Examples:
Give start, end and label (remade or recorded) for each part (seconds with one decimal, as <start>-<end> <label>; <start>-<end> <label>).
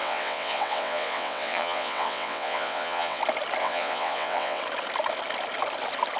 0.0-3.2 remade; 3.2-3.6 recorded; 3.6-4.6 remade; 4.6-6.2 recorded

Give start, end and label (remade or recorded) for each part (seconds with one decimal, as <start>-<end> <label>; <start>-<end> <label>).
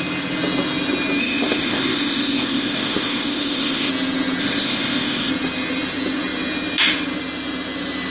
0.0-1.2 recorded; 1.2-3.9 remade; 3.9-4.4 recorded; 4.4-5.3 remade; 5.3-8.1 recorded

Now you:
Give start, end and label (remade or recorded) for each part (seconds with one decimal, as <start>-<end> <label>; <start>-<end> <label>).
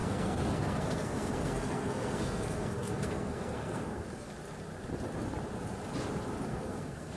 0.0-4.3 remade; 4.3-6.5 recorded; 6.5-7.2 remade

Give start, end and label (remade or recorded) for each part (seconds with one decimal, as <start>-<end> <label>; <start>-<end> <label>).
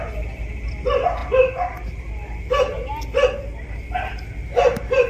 0.0-5.1 recorded